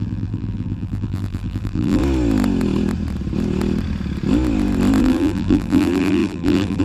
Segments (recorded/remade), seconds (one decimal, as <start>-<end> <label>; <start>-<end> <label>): 0.0-2.0 remade; 2.0-5.0 recorded; 5.0-6.8 remade